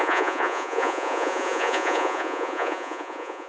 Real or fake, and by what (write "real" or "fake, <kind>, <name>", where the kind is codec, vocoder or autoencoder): fake, vocoder, Vocos